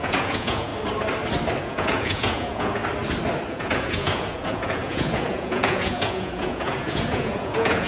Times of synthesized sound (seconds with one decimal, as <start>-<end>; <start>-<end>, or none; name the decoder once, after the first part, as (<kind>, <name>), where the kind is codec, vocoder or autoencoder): 0.0-0.7 (vocoder, Vocos); 1.6-2.8; 3.5-7.9